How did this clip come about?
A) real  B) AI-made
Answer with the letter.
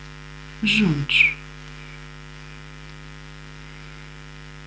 A